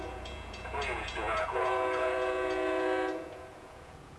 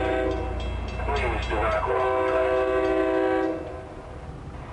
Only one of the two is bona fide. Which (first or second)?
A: second